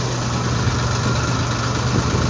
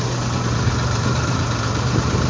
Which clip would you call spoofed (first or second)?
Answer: second